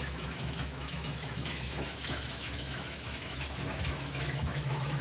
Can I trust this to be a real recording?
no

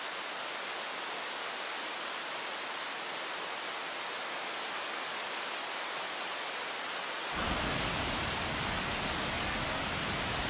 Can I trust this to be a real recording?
yes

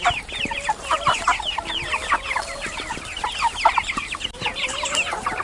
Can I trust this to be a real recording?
yes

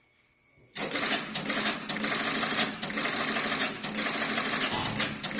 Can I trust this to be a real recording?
yes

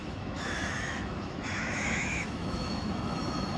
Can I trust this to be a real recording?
no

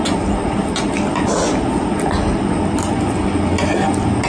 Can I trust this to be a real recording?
yes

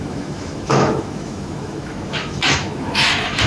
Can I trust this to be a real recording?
no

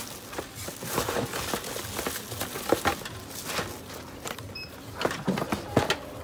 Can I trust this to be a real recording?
yes